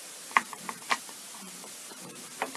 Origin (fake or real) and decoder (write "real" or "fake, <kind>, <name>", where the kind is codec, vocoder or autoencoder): fake, vocoder, BigVGAN v2